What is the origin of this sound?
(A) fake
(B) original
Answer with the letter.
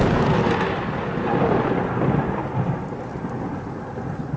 B